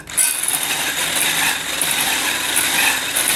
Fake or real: real